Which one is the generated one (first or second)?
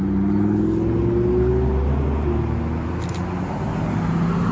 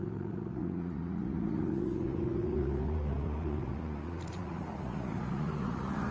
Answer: second